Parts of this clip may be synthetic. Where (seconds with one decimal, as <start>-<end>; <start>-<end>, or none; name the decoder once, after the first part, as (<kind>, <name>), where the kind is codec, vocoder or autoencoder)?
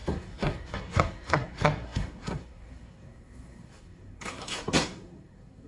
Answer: 0.0-5.7 (codec, SNAC)